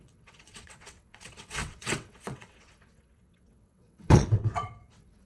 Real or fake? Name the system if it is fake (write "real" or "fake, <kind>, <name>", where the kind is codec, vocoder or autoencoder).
fake, vocoder, WaveNeXt